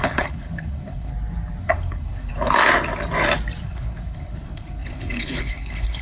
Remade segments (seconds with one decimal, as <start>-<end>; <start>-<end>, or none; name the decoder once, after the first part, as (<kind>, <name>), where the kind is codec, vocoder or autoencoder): 0.0-1.1 (codec, HILCodec); 1.6-2.3; 3.6-6.0